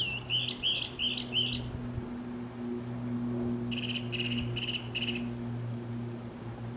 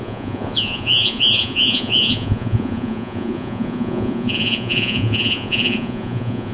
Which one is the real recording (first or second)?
first